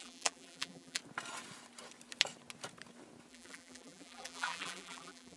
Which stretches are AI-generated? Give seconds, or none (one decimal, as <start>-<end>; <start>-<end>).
0.0-1.0; 3.3-5.4